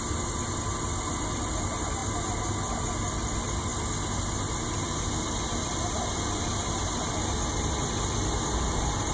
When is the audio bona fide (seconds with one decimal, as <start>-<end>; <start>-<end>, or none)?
0.0-9.1